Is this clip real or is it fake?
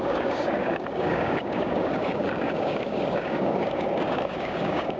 fake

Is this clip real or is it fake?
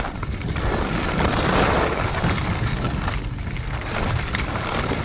real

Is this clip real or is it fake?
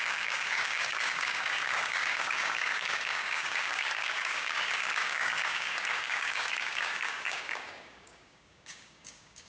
fake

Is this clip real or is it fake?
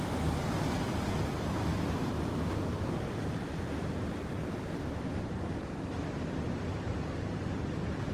real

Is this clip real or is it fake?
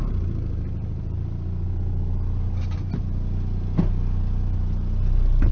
real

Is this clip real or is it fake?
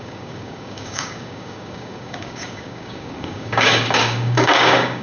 fake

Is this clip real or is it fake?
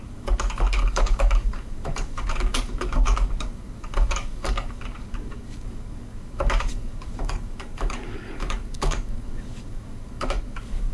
fake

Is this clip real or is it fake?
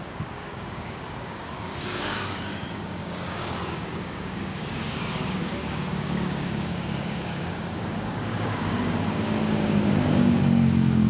fake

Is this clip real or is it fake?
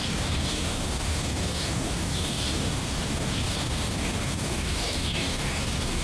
fake